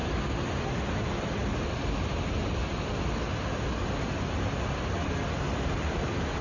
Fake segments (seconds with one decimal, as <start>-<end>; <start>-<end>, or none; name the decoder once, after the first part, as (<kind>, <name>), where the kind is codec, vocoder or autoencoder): none